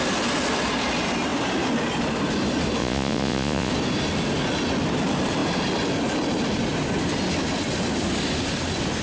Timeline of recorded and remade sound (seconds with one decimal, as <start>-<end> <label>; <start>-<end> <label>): 0.0-2.8 recorded; 2.8-3.7 remade; 3.7-9.0 recorded